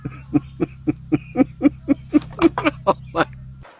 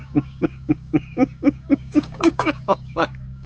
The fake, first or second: second